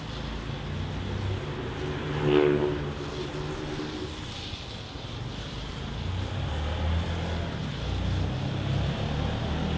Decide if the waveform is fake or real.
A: real